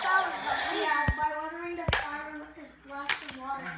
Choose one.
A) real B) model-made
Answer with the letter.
A